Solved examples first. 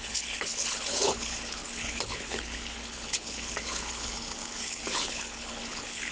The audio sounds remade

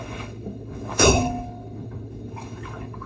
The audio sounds remade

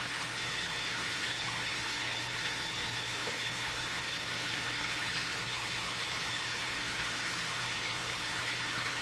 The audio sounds remade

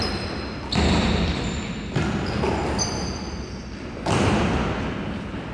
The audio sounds recorded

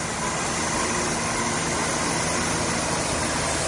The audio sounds recorded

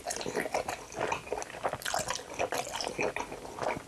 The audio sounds recorded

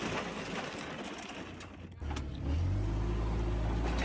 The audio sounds recorded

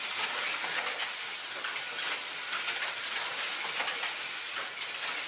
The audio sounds recorded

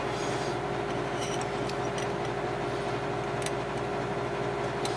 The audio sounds recorded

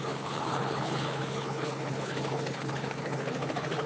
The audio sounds remade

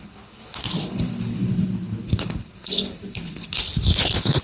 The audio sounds remade